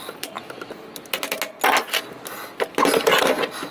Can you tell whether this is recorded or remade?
recorded